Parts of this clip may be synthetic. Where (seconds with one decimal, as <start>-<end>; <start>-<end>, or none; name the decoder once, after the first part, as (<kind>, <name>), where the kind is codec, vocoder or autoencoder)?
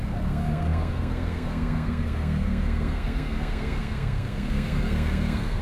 0.0-5.6 (codec, SNAC)